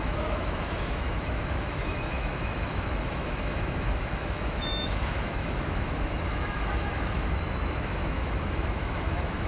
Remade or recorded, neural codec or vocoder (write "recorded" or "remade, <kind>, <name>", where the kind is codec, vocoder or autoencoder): remade, autoencoder, DAC-VAE